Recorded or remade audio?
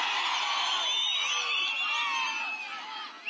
recorded